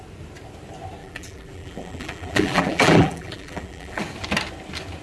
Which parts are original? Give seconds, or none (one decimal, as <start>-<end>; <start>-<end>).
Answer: 0.0-1.0; 4.0-5.0